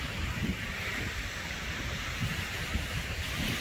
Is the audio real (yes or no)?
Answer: no